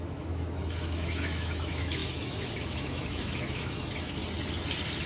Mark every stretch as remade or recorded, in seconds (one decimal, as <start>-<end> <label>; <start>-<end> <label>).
0.0-4.2 remade; 4.2-5.1 recorded

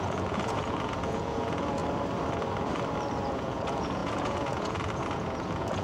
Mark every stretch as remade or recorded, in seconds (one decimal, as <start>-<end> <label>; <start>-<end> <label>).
0.0-1.8 remade; 1.8-3.3 recorded; 3.3-5.8 remade

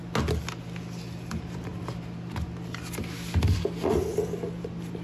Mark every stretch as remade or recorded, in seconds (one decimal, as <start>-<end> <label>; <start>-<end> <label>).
0.0-5.0 recorded

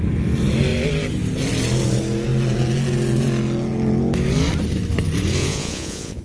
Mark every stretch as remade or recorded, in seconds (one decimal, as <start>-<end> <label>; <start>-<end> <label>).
0.0-5.4 recorded; 5.4-6.2 remade